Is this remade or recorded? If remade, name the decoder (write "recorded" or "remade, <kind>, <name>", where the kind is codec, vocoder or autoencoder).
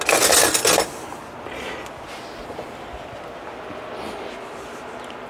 recorded